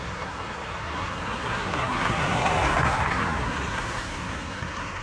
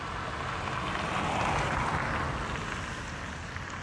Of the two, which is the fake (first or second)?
first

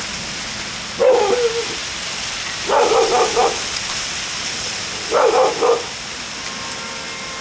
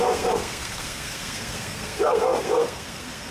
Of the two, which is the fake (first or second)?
second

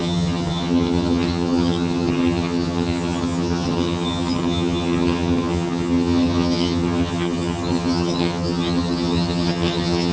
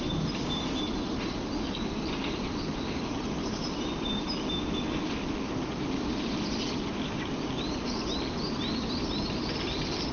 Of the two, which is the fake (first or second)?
first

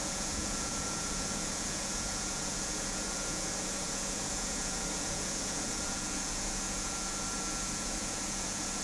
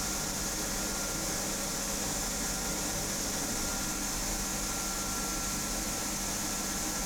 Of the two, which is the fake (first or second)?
first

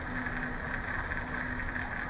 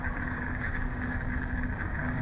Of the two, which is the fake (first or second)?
second